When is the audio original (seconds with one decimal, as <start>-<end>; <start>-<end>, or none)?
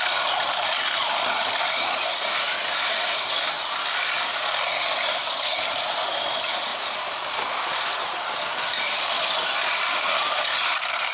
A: 0.0-11.1